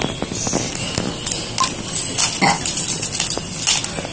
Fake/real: real